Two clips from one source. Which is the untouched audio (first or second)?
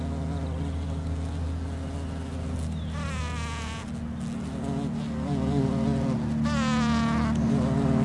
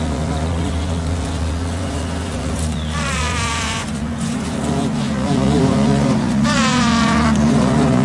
first